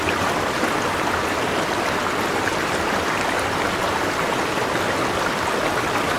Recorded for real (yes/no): yes